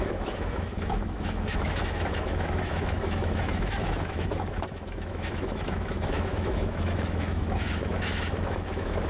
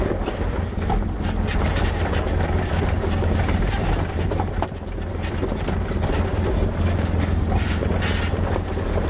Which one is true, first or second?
second